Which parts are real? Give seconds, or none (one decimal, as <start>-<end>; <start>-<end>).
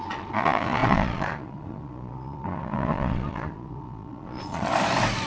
4.7-5.3